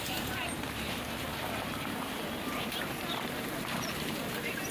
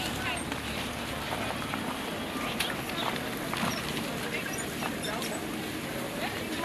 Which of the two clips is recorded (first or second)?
second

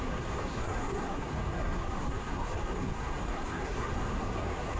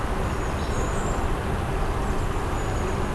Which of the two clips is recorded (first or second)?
second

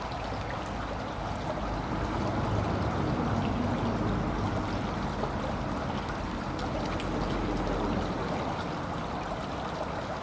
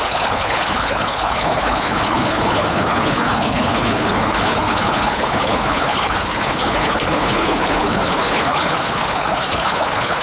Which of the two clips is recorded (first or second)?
first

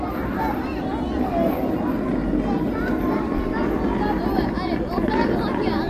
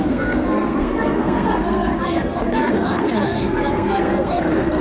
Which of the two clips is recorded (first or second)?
first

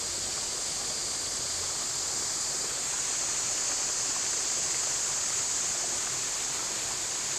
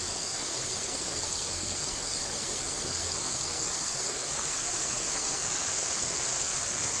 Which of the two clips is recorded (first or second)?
first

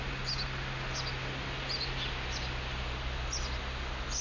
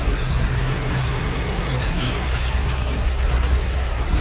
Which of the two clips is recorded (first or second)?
first